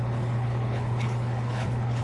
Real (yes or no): no